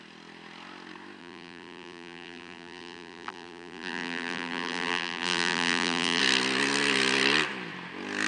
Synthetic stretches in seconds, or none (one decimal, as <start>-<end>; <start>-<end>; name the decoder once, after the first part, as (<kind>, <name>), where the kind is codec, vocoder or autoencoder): 1.2-6.2 (vocoder, BigVGAN v2)